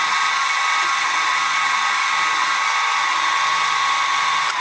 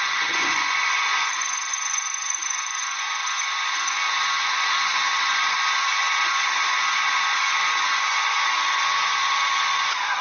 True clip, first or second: first